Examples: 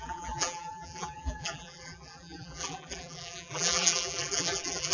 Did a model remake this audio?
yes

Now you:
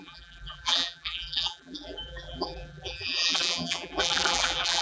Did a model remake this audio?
yes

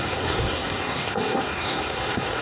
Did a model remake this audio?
yes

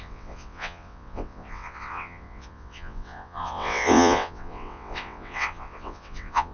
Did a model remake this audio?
yes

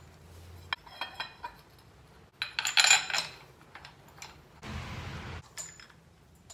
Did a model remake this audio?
no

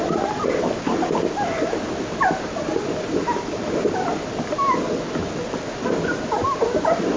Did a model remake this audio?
no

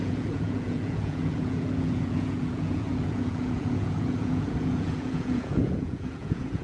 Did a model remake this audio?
yes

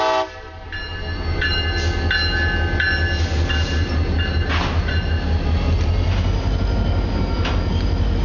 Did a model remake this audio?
no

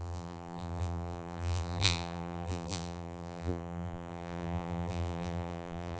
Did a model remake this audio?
yes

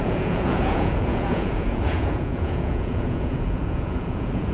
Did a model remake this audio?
yes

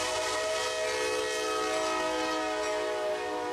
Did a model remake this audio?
no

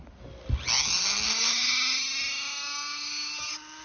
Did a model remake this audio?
no